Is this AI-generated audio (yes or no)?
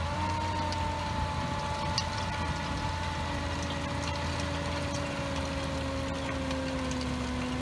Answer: no